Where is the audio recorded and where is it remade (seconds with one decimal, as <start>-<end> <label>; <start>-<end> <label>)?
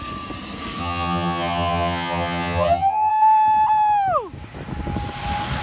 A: 0.0-0.8 recorded; 0.8-3.1 remade; 3.1-5.6 recorded